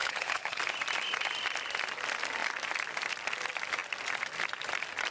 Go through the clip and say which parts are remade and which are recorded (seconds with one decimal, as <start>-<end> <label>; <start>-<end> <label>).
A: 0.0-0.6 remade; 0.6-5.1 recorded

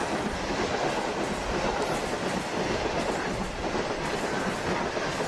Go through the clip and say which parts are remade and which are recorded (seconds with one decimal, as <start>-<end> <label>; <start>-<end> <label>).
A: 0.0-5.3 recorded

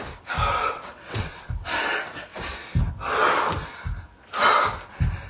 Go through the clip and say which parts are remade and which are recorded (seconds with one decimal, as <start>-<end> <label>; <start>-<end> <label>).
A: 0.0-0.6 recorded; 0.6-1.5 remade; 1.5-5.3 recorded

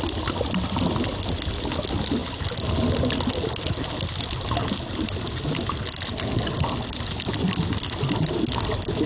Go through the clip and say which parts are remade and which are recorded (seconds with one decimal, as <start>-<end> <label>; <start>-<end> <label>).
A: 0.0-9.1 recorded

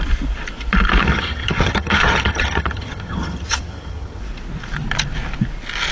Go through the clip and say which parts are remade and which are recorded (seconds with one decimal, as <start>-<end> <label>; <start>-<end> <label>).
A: 0.0-1.0 recorded; 1.0-4.2 remade; 4.2-5.9 recorded

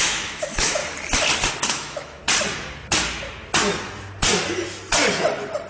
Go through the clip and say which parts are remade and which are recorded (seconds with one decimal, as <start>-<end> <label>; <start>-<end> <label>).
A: 0.0-0.8 remade; 0.8-1.7 recorded; 1.7-2.2 remade; 2.2-5.7 recorded

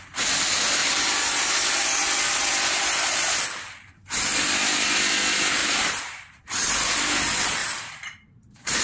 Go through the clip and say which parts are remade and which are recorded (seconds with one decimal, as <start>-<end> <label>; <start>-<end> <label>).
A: 0.0-0.8 recorded; 0.8-1.5 remade; 1.5-2.5 recorded; 2.5-3.2 remade; 3.2-5.6 recorded; 5.6-6.4 remade; 6.4-7.6 recorded; 7.6-8.8 remade